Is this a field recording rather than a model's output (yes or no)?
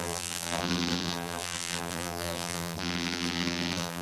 no